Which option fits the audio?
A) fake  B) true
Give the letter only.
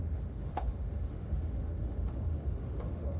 A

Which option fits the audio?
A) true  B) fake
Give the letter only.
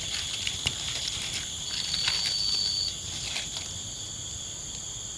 A